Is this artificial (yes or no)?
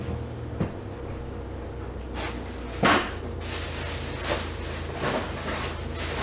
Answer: no